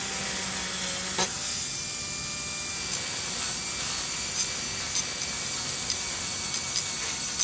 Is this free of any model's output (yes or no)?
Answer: yes